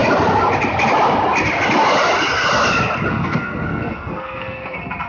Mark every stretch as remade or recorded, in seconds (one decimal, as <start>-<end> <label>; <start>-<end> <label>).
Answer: 0.0-3.1 recorded; 3.1-5.1 remade